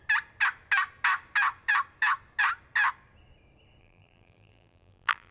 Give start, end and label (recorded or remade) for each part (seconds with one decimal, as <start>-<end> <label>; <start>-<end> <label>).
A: 0.0-3.8 recorded; 3.8-5.3 remade